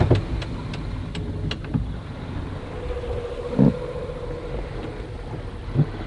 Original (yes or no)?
yes